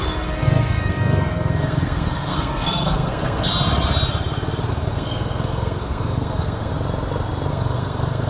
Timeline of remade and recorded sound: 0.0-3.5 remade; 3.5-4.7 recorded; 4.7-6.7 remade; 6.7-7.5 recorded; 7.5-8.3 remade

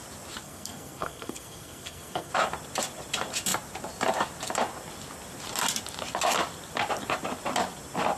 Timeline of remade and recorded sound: 0.0-0.4 recorded; 0.4-2.3 remade; 2.3-8.2 recorded

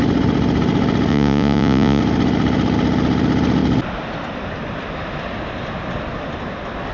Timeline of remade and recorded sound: 0.0-1.1 recorded; 1.1-2.0 remade; 2.0-6.9 recorded